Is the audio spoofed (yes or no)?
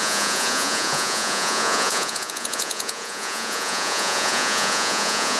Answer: yes